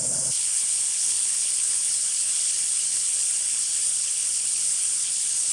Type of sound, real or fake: fake